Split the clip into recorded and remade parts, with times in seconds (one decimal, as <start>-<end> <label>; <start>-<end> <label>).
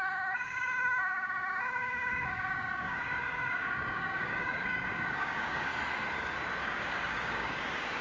0.0-5.7 remade; 5.7-6.6 recorded; 6.6-8.0 remade